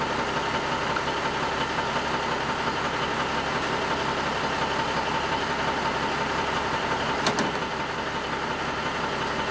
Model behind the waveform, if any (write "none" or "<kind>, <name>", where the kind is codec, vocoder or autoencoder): none